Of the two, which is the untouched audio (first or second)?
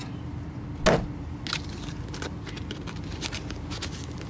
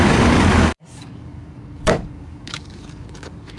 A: first